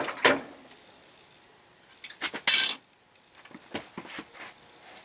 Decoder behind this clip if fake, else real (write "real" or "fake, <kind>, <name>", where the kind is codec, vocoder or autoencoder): real